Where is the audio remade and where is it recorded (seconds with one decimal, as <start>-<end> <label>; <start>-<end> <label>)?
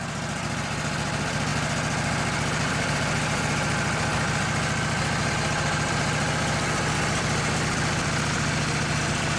0.0-9.4 recorded